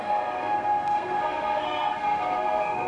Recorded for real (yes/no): no